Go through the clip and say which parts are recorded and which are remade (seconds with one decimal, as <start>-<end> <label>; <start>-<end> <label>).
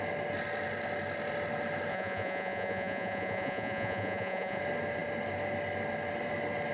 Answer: 0.0-1.9 recorded; 1.9-4.6 remade; 4.6-6.7 recorded